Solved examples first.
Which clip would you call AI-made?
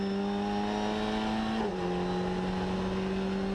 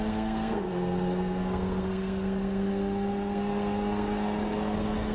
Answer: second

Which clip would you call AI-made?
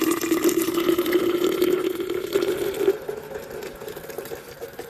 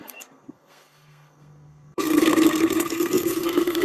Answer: second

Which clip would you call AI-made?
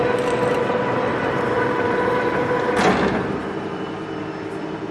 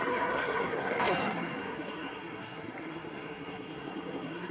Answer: second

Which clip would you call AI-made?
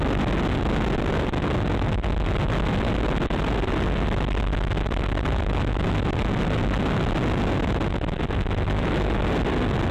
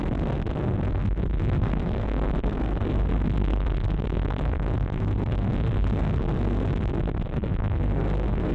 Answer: second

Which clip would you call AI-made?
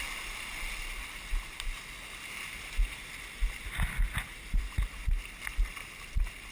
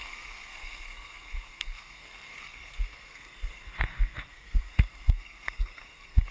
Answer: second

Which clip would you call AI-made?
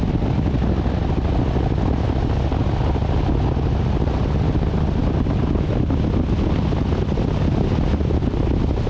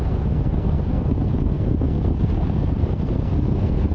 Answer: second